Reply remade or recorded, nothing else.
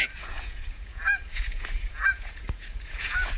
remade